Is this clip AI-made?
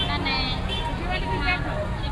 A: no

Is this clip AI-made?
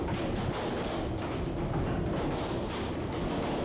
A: no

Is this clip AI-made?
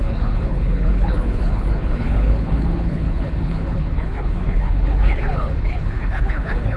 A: yes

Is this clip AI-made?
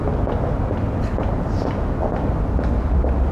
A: no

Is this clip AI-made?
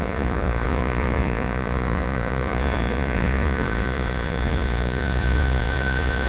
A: yes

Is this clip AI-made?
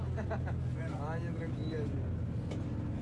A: no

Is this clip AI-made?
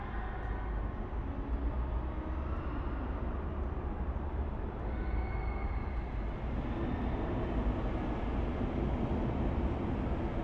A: no